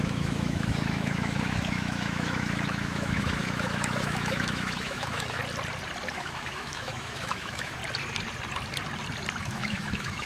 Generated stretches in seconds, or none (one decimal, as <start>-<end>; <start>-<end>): 0.0-5.4; 6.1-7.8; 9.4-10.3